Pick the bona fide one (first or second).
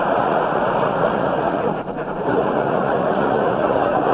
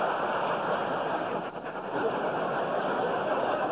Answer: second